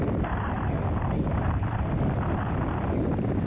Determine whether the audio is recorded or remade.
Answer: recorded